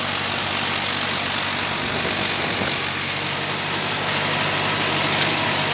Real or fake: real